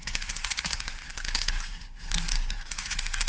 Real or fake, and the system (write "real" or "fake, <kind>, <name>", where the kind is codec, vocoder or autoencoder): fake, codec, SNAC